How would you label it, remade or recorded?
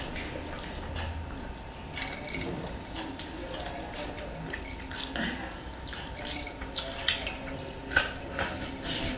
recorded